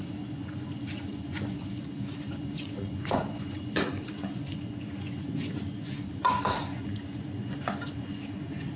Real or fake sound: fake